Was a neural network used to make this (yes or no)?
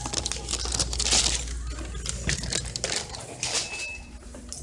no